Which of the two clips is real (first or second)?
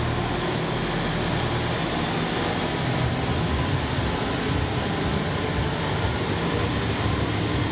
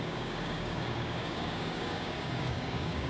first